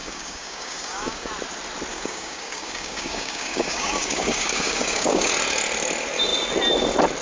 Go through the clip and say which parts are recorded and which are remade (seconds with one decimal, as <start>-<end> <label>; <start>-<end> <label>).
0.0-1.3 remade; 1.3-1.9 recorded; 1.9-5.3 remade; 5.3-7.2 recorded